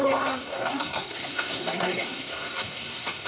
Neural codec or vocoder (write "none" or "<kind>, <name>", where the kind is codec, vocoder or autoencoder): codec, SNAC